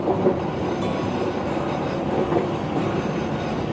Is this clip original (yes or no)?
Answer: yes